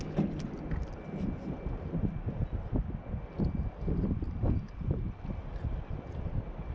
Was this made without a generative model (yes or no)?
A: yes